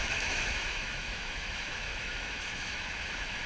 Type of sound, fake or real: fake